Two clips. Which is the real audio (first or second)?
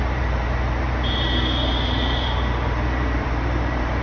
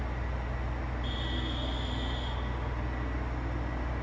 second